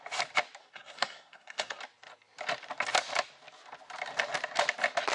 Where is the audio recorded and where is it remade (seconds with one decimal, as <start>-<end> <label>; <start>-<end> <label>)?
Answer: 0.0-0.6 recorded; 0.6-1.8 remade; 1.8-5.1 recorded